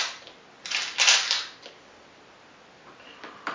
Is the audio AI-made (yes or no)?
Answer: no